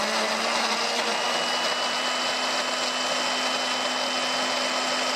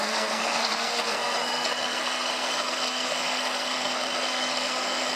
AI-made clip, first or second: second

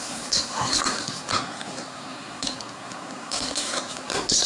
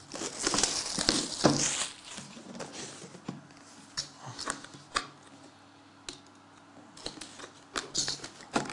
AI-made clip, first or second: first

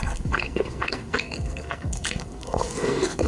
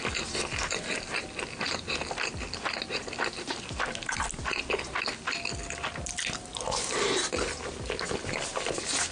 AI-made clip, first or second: first